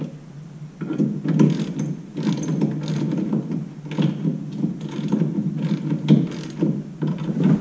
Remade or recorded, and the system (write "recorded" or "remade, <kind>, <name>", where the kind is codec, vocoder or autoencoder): recorded